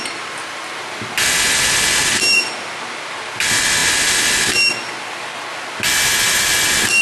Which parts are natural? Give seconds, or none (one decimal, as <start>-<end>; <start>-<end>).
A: 0.0-7.0